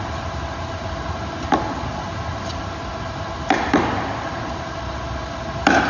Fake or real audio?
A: real